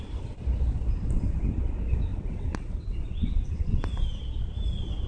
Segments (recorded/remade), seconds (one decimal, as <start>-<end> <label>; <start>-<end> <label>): 0.0-2.1 recorded; 2.1-3.9 remade; 3.9-5.1 recorded